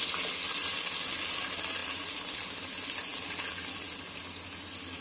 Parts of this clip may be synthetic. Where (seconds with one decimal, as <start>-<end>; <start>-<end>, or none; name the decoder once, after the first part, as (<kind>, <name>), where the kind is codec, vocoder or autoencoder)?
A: 1.8-2.5 (vocoder, BigVGAN v2)

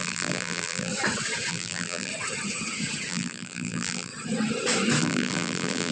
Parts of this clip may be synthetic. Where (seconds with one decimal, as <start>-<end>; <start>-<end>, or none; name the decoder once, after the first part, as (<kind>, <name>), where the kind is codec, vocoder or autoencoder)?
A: 0.0-0.9 (vocoder, BigVGAN v2); 1.5-2.1; 3.1-4.1; 5.0-5.9

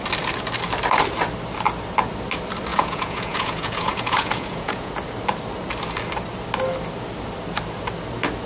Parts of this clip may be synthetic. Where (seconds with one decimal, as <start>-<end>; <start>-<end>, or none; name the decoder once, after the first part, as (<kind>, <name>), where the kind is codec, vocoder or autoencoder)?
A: 2.7-4.9 (vocoder, Vocos)